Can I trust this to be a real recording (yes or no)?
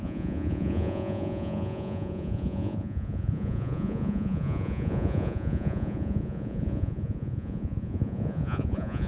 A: no